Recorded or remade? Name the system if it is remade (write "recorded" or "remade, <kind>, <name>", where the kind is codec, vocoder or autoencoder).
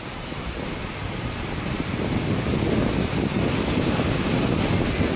recorded